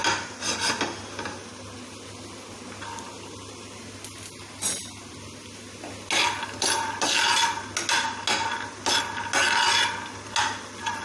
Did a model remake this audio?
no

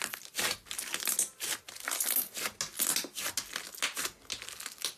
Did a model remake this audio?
no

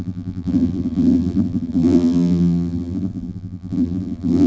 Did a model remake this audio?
yes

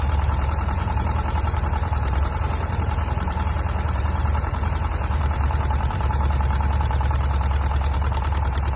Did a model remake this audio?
yes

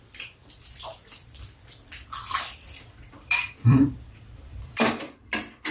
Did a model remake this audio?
yes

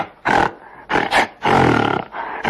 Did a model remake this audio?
no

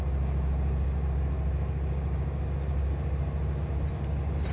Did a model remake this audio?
no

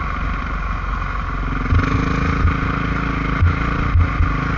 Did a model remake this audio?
no